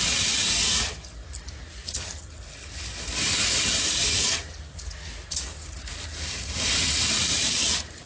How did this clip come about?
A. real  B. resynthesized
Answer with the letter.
A